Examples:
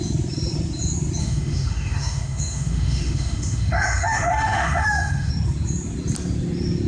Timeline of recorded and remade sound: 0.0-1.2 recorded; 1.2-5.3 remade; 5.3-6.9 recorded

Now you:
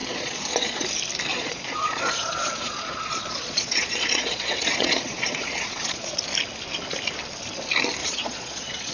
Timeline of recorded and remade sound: 0.0-0.9 remade; 0.9-1.3 recorded; 1.3-6.2 remade; 6.2-8.0 recorded; 8.0-8.9 remade

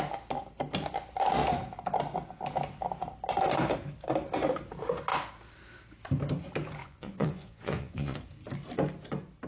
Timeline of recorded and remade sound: 0.0-6.8 recorded; 6.8-8.2 remade; 8.2-9.5 recorded

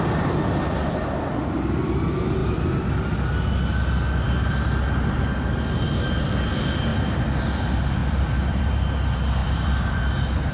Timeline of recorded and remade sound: 0.0-2.4 recorded; 2.4-2.9 remade; 2.9-8.0 recorded; 8.0-8.6 remade; 8.6-9.4 recorded; 9.4-10.0 remade; 10.0-10.5 recorded

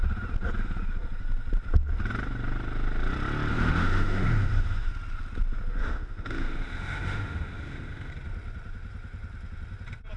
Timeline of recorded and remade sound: 0.0-3.5 recorded; 3.5-4.9 remade; 4.9-5.8 recorded; 5.8-8.1 remade; 8.1-10.2 recorded